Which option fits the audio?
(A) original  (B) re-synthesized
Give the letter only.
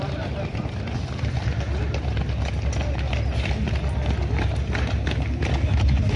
A